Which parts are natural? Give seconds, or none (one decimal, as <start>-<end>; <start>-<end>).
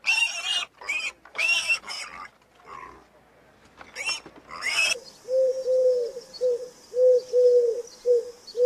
0.0-1.3; 2.0-8.7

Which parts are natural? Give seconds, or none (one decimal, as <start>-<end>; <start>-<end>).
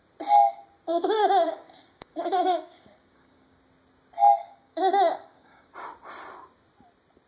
0.0-1.2; 3.6-4.4; 5.7-7.3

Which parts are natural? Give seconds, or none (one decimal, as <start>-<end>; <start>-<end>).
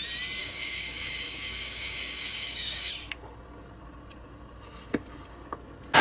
0.0-0.4; 2.9-6.0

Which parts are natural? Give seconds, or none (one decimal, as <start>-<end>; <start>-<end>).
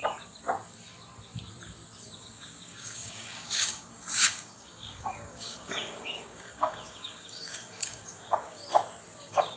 0.0-2.2; 8.6-9.2